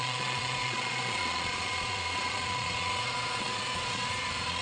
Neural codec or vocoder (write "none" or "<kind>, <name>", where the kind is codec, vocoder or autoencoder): vocoder, Vocos